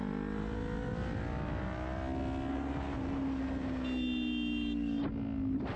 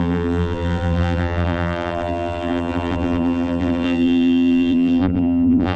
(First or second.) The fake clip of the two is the second